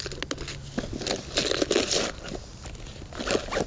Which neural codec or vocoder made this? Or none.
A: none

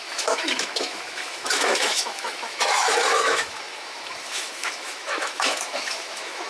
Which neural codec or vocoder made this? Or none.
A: autoencoder, DAC-VAE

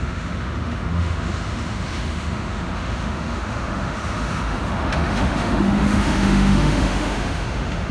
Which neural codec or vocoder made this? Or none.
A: autoencoder, DAC-VAE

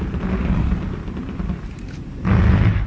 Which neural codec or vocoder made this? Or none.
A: none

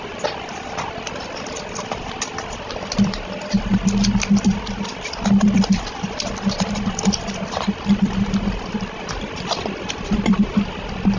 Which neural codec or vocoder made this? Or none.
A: none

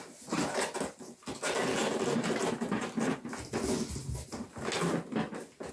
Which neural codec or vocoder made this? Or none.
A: none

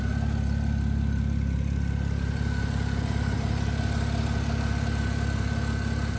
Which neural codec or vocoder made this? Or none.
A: none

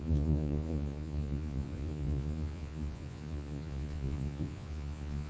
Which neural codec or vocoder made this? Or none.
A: vocoder, Vocos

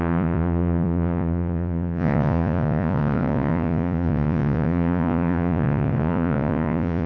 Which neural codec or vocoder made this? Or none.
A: vocoder, Vocos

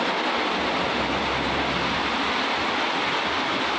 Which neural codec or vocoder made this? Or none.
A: none